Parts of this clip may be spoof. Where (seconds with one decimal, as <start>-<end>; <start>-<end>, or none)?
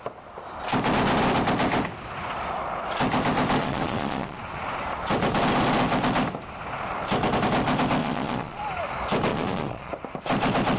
3.6-4.4; 8.0-8.6; 9.3-9.9